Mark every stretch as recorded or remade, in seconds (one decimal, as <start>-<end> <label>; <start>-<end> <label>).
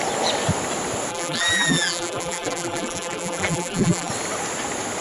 0.0-1.1 recorded; 1.1-4.1 remade; 4.1-5.0 recorded